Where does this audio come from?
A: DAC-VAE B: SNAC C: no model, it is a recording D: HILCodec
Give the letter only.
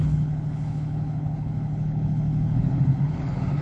D